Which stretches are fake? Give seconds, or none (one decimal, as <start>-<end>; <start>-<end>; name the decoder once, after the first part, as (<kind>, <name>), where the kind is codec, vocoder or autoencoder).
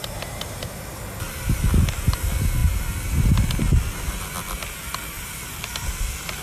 0.0-0.8 (vocoder, BigVGAN v2)